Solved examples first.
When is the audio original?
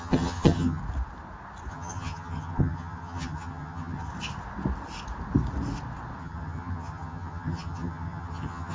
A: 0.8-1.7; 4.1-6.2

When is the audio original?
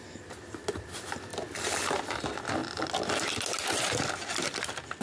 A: 0.0-5.0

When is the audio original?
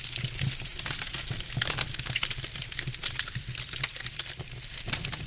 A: 0.0-5.3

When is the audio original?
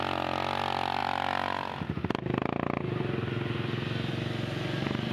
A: 0.0-5.1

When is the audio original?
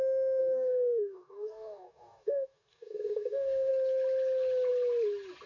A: 0.0-0.4; 3.7-5.5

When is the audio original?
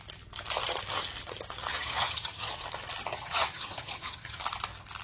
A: 0.0-1.7; 2.5-3.1; 4.4-5.0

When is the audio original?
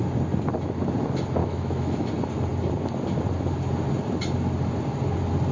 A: 0.0-1.4; 2.1-5.5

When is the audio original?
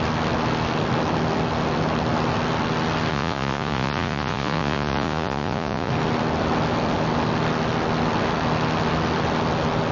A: 0.0-3.1; 5.9-9.9